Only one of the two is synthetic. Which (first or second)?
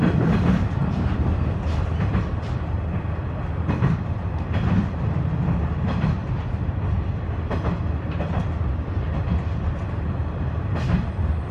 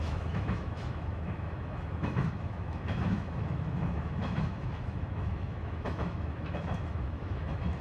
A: second